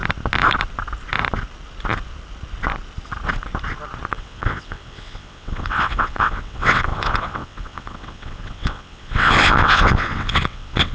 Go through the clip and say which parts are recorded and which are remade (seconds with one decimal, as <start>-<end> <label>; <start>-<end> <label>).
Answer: 0.0-4.1 recorded; 4.1-10.9 remade